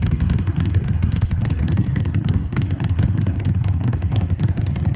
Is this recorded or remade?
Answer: remade